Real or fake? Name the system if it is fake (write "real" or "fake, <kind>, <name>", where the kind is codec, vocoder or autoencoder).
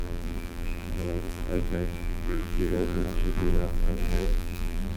fake, vocoder, BigVGAN v2